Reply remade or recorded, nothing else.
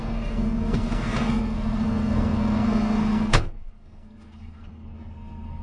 remade